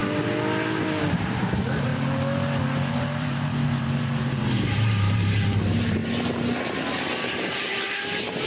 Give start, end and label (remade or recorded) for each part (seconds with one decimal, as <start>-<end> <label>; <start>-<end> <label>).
0.0-1.0 recorded; 1.0-1.9 remade; 1.9-2.9 recorded; 2.9-6.0 remade; 6.0-7.3 recorded; 7.3-8.5 remade